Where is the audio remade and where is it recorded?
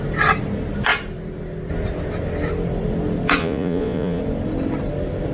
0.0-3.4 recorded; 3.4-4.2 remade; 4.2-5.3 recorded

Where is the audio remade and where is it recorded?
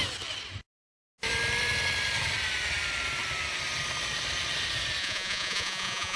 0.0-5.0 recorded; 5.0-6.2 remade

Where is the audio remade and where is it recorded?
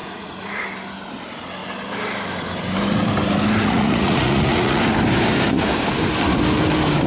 0.0-0.6 remade; 0.6-3.6 recorded; 3.6-4.8 remade; 4.8-7.1 recorded